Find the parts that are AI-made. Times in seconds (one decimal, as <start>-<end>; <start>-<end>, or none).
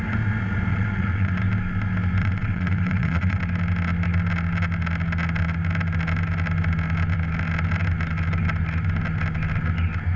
0.7-1.3; 2.2-3.4